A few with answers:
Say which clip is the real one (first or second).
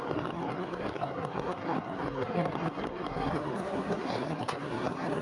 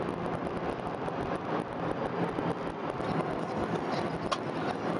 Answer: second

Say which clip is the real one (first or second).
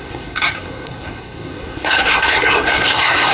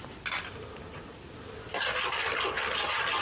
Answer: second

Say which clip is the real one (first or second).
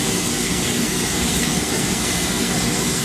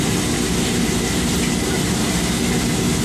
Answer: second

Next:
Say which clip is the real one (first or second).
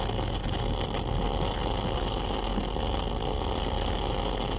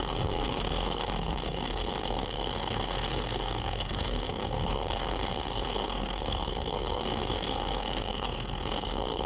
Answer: first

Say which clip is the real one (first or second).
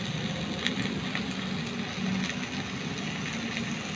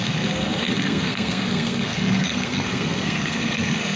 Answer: first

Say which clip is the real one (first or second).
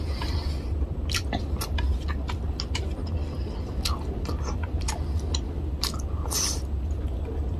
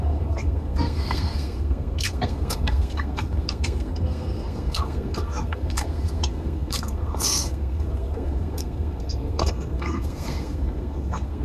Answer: first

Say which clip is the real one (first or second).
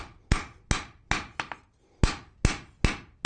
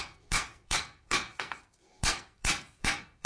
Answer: first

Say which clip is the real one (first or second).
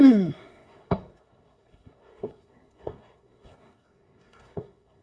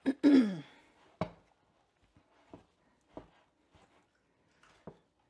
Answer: second